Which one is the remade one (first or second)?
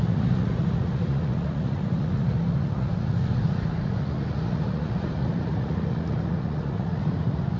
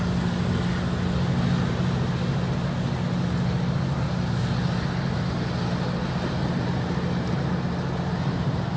first